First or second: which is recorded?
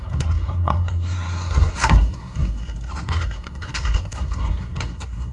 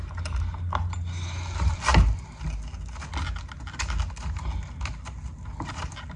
second